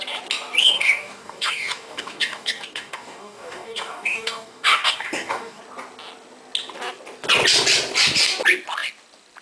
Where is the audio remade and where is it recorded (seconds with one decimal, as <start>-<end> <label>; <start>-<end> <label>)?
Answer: 0.0-0.6 recorded; 0.6-5.6 remade; 5.6-9.4 recorded